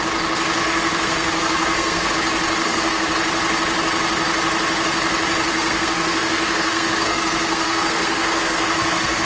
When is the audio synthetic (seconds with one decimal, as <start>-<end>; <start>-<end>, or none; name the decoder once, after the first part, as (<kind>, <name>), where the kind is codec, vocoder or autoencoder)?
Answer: 0.6-2.1 (codec, SNAC); 2.6-3.1; 5.5-9.2